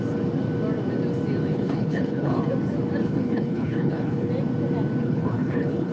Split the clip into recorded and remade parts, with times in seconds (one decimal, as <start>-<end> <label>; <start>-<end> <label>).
0.0-1.5 recorded; 1.5-2.4 remade; 2.4-3.0 recorded; 3.0-4.3 remade; 4.3-5.0 recorded; 5.0-5.9 remade